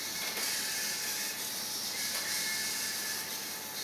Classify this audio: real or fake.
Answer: real